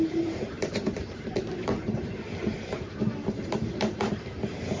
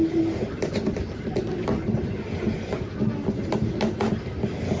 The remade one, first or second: first